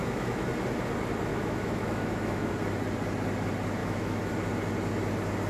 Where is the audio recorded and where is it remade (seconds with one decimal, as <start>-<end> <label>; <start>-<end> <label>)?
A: 0.0-0.5 remade; 0.5-1.3 recorded; 1.3-2.5 remade; 2.5-3.8 recorded; 3.8-4.3 remade; 4.3-5.5 recorded